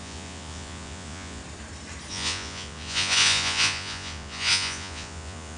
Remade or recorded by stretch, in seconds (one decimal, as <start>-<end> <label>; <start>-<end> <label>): 0.0-1.4 remade; 1.4-2.1 recorded; 2.1-5.6 remade